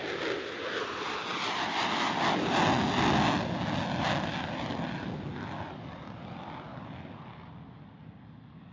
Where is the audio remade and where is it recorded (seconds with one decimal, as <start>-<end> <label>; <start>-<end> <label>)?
0.0-8.7 recorded